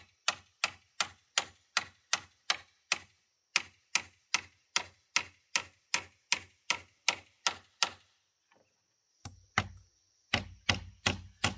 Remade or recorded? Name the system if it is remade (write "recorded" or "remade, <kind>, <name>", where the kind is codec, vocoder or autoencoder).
recorded